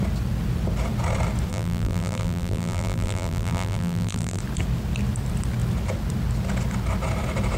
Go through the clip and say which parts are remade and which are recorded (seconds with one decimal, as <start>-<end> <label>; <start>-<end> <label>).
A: 0.0-1.5 recorded; 1.5-4.4 remade; 4.4-7.6 recorded